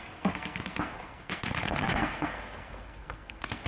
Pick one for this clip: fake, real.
fake